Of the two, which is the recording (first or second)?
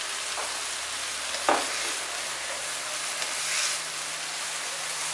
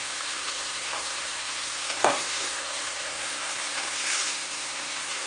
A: first